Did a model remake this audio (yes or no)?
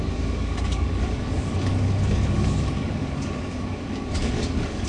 yes